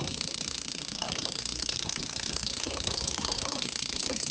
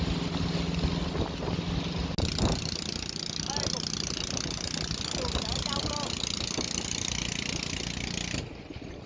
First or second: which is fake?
first